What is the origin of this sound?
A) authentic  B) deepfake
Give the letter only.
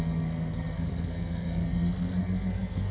B